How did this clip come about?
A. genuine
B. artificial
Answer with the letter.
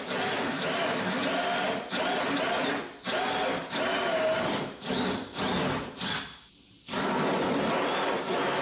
A